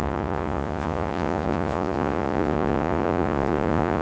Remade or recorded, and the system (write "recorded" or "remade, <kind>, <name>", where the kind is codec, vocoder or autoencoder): remade, vocoder, Vocos